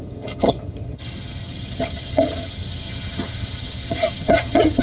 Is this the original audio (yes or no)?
no